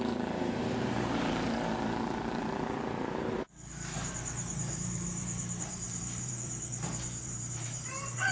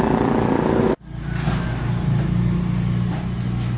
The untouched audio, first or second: second